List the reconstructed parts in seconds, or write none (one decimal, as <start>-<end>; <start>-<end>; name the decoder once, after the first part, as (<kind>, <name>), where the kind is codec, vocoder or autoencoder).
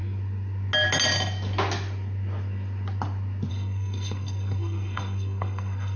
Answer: 3.5-6.0 (codec, SNAC)